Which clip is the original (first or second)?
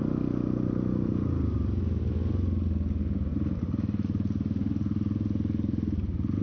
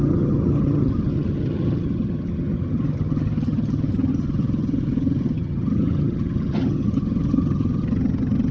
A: first